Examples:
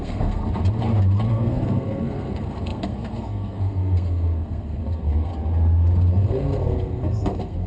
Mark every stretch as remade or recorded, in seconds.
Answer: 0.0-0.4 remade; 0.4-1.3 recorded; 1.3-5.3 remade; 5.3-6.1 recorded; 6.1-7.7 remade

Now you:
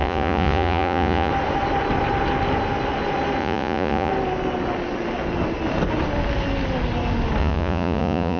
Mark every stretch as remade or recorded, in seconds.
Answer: 0.0-1.3 remade; 1.3-3.4 recorded; 3.4-4.1 remade; 4.1-7.4 recorded; 7.4-8.4 remade

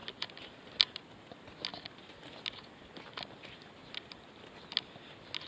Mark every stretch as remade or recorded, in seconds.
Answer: 0.0-5.5 recorded

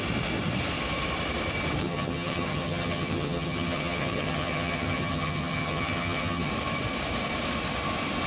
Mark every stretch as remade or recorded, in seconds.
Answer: 0.0-1.8 recorded; 1.8-6.5 remade; 6.5-8.3 recorded

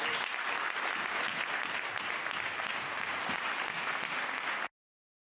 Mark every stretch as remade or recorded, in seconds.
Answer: 0.0-5.3 recorded

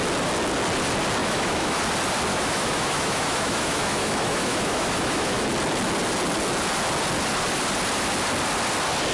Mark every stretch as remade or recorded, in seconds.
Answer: 0.0-1.2 recorded; 1.2-1.8 remade; 1.8-2.3 recorded; 2.3-5.5 remade; 5.5-9.1 recorded